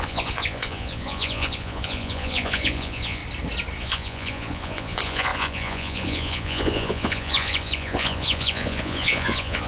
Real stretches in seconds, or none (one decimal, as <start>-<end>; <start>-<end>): 3.2-3.8